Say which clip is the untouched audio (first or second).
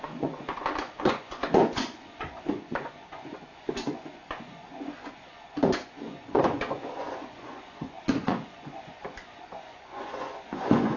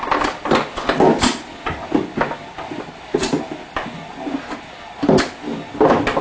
second